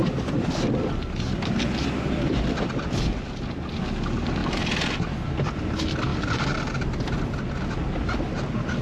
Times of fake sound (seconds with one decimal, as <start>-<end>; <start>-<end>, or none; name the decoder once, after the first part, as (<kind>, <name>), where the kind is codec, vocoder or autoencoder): 0.0-3.5 (vocoder, BigVGAN v2); 4.4-5.5